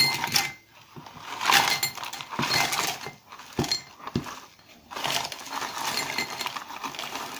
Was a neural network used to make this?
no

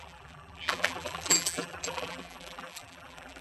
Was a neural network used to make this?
yes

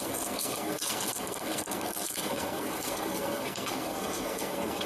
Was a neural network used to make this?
yes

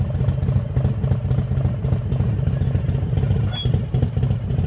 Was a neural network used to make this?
no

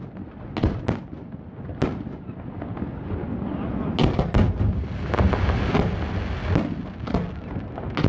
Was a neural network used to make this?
no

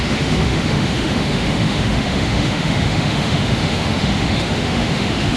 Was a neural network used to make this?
yes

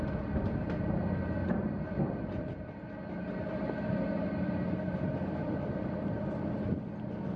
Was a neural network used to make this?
no